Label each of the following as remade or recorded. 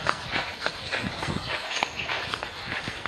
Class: remade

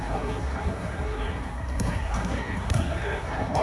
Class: remade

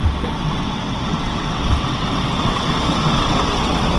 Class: remade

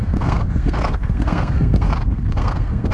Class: remade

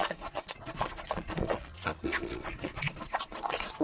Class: remade